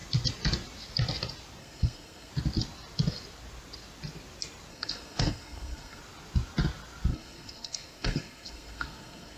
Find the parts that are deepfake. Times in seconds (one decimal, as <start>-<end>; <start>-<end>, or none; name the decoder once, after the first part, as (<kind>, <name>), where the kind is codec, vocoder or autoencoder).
1.6-2.3 (codec, SNAC); 4.7-6.0; 7.1-9.4